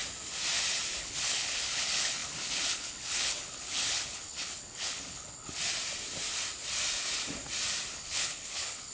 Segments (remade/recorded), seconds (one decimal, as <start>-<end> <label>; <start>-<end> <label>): 0.0-1.0 recorded; 1.0-5.6 remade; 5.6-7.9 recorded; 7.9-8.9 remade